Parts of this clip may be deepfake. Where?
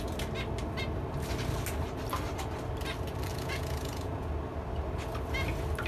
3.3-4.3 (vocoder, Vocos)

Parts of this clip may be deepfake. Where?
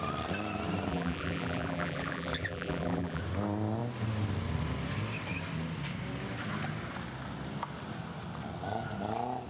0.9-3.2 (vocoder, BigVGAN v2)